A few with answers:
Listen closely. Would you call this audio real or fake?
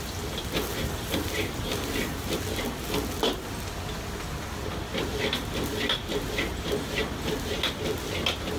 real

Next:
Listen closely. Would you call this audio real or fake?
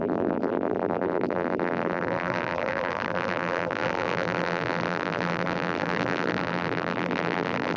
fake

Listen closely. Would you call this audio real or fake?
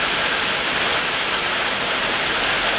real